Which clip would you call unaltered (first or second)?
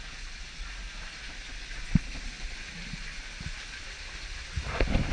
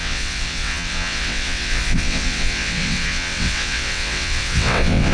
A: first